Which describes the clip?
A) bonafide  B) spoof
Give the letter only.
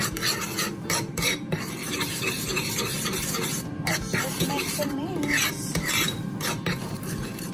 B